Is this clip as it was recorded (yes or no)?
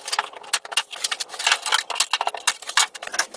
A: yes